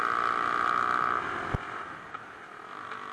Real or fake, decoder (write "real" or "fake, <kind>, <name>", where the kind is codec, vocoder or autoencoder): real